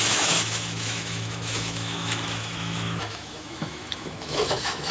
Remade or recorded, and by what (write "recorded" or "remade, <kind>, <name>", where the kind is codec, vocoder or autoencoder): remade, autoencoder, DAC-VAE